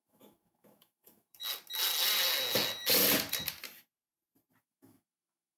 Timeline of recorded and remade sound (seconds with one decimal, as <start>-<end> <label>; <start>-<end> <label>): 0.0-1.4 remade; 1.4-4.6 recorded; 4.6-5.6 remade